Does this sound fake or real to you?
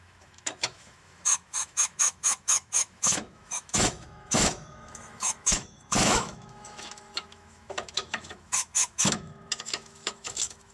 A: fake